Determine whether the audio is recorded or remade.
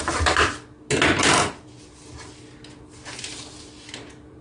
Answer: recorded